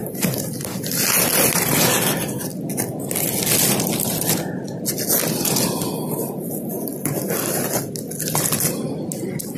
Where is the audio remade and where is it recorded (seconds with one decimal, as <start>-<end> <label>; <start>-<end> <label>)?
0.0-9.6 recorded